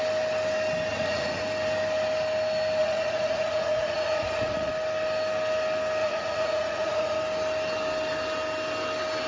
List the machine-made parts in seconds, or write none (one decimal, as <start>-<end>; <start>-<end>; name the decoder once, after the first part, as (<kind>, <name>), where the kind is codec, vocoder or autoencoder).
0.9-1.4 (vocoder, Vocos); 2.8-4.7; 6.0-7.2